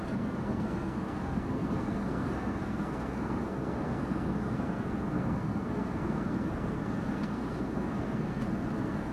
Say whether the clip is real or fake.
fake